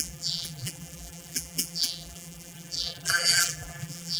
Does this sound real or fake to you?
fake